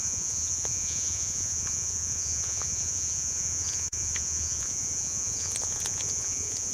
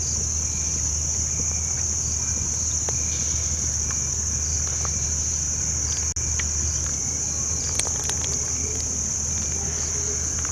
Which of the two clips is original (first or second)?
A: second